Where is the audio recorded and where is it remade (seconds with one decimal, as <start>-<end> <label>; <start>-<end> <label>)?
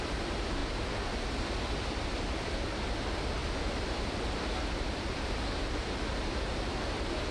0.0-7.3 recorded